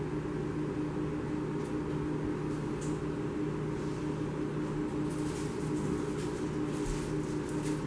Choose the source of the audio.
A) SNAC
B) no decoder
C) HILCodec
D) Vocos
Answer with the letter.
B